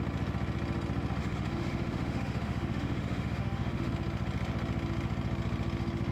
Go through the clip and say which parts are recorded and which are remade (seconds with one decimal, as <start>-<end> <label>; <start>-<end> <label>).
0.0-1.2 recorded; 1.2-3.9 remade; 3.9-6.1 recorded